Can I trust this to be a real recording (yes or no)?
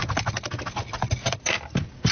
yes